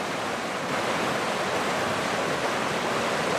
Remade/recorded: recorded